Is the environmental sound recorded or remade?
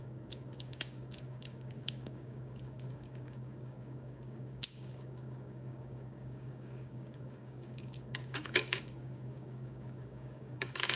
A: remade